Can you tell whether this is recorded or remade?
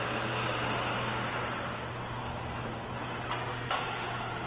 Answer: recorded